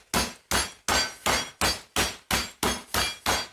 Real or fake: real